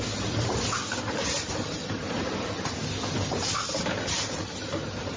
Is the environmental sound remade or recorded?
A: recorded